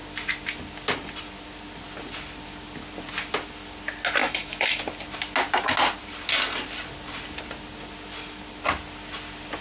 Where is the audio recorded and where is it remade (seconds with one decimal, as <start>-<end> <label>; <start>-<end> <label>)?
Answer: 0.0-4.2 recorded; 4.2-4.8 remade; 4.8-9.6 recorded